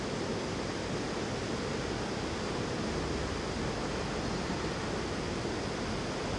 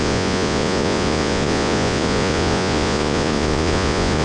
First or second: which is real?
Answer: first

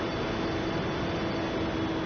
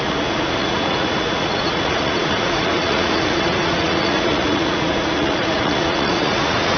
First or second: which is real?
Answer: first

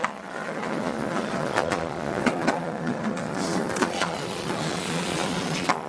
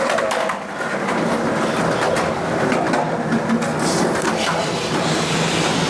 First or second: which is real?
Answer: second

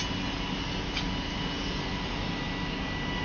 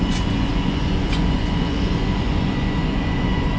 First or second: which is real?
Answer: first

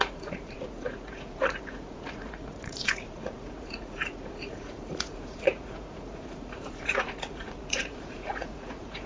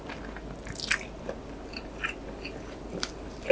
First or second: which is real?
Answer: second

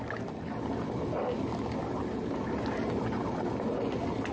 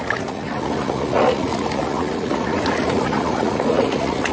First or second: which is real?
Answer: first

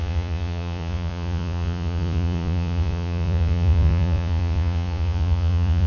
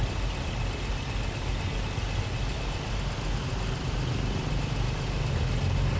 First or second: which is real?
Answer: second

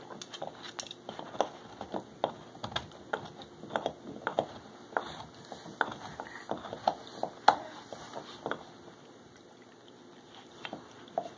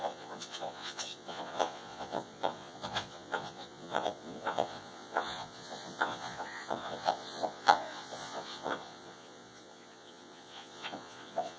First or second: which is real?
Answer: first